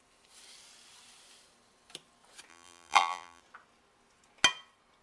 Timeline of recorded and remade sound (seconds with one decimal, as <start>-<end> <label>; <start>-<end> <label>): 0.0-2.5 recorded; 2.5-3.4 remade; 3.4-5.0 recorded